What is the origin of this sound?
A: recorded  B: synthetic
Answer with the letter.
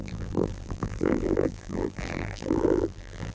B